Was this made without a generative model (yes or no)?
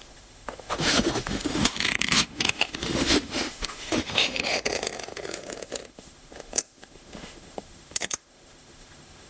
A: no